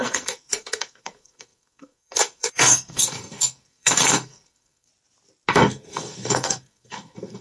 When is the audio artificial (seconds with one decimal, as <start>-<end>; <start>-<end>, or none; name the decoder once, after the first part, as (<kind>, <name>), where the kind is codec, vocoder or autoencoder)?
0.0-4.9 (codec, SNAC); 5.5-7.4